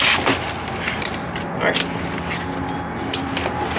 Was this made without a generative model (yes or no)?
yes